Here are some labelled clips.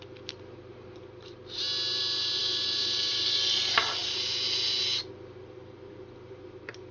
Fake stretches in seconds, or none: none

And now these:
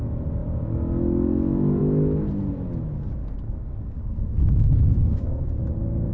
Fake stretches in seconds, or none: 3.2-5.6 (codec, SNAC)

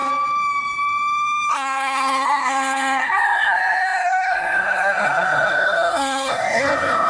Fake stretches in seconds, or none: 1.5-7.1 (codec, SNAC)

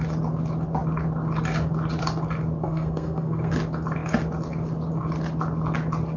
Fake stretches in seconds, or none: 2.6-3.5 (codec, SNAC)

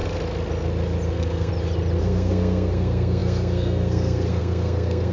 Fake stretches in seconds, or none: 1.1-1.5 (codec, SNAC); 2.0-5.1

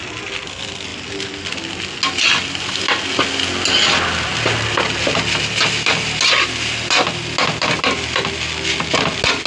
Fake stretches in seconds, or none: none

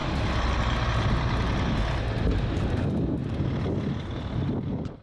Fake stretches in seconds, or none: none

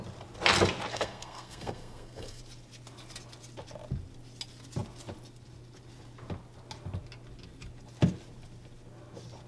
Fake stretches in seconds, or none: 0.9-2.4 (codec, SNAC)